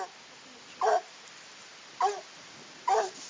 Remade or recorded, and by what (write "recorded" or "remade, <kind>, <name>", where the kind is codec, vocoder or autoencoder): recorded